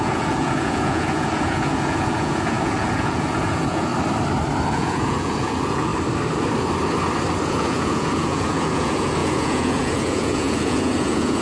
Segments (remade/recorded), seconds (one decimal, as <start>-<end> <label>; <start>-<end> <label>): 0.0-3.9 remade; 3.9-4.7 recorded; 4.7-5.9 remade; 5.9-7.5 recorded; 7.5-11.4 remade